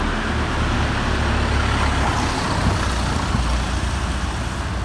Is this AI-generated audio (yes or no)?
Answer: no